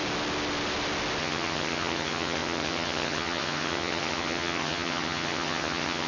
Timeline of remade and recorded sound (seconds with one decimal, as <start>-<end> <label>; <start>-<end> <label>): 0.0-1.2 recorded; 1.2-6.1 remade